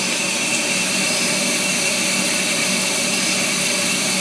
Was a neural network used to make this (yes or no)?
yes